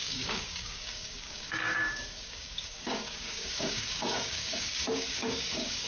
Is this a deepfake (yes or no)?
yes